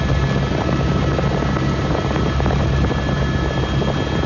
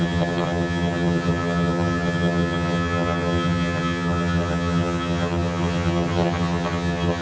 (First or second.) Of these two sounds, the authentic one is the first